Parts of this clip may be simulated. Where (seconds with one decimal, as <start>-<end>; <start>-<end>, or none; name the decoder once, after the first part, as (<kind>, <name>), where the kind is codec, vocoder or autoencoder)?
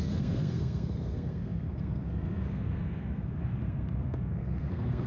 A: 0.0-5.1 (codec, SNAC)